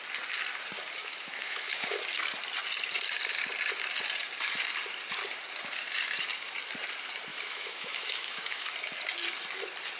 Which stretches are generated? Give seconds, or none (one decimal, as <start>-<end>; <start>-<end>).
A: 1.0-2.0; 7.3-8.7